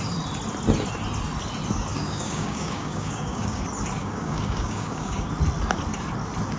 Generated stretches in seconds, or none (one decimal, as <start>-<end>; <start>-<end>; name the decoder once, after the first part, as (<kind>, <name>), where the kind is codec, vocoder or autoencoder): 1.9-3.6 (codec, DAC); 4.0-5.3

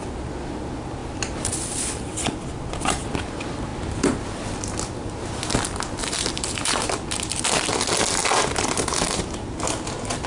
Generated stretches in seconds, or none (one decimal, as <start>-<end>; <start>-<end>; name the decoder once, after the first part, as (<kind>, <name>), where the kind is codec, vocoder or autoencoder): 6.0-6.8 (vocoder, BigVGAN v2)

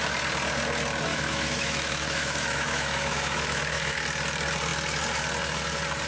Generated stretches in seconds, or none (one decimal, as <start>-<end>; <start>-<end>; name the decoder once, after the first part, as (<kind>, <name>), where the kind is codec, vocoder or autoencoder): 1.1-4.0 (autoencoder, DAC-VAE)

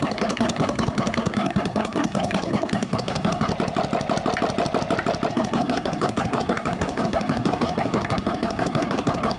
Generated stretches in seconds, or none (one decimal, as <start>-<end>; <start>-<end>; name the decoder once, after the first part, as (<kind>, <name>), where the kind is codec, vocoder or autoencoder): 0.0-3.5 (codec, SNAC); 5.3-9.4